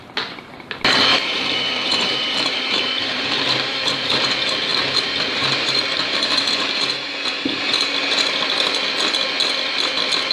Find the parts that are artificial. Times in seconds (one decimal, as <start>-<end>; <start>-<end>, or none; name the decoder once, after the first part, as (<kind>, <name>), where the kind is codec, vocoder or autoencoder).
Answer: 1.1-4.3 (vocoder, BigVGAN v2); 4.7-6.9